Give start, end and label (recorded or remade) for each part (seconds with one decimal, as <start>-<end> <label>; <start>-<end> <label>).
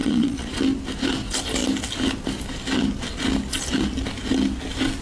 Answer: 0.0-0.6 remade; 0.6-5.0 recorded